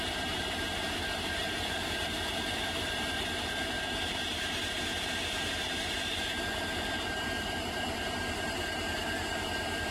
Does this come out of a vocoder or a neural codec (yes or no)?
yes